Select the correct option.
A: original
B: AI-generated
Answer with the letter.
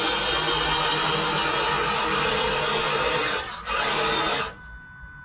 A